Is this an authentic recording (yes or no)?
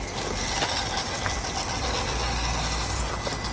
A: yes